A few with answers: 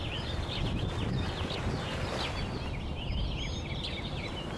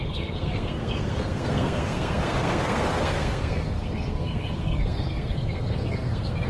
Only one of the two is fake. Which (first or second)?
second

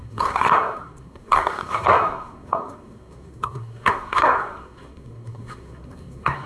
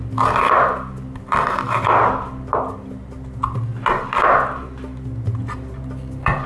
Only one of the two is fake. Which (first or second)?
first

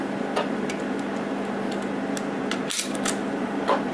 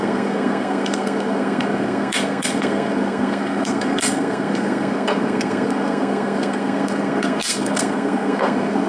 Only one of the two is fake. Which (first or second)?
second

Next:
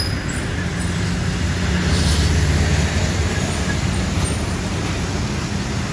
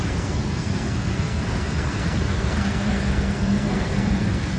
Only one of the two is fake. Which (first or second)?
second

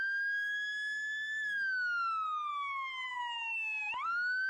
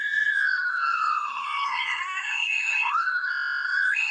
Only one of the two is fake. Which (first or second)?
second